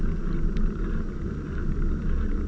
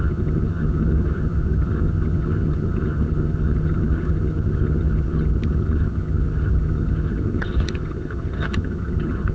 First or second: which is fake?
second